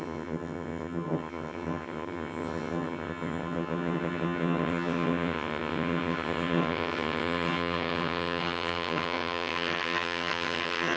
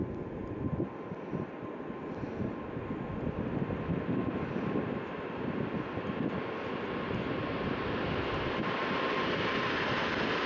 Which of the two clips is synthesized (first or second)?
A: first